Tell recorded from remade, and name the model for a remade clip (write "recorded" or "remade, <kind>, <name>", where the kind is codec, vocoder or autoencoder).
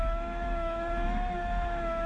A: remade, autoencoder, DAC-VAE